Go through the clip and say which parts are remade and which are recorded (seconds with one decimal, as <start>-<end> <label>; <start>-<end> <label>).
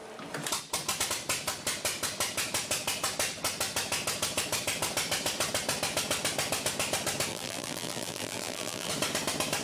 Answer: 0.0-7.3 recorded; 7.3-8.9 remade; 8.9-9.6 recorded